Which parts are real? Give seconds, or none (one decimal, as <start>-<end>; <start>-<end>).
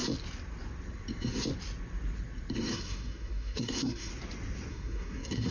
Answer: 0.0-2.7; 4.1-4.7